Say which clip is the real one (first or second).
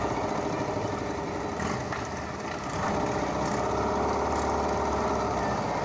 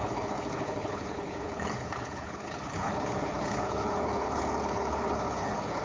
first